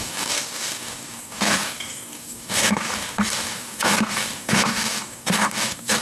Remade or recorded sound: remade